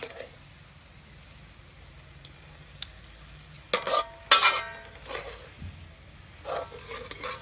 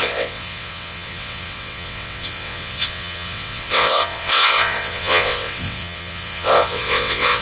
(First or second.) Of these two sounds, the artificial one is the second